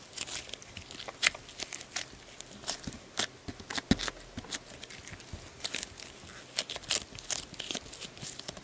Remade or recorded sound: recorded